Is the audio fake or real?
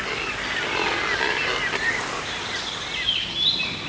real